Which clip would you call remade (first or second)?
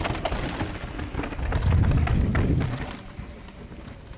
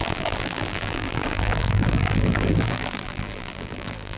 second